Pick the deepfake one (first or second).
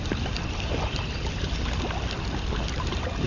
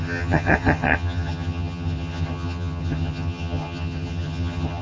second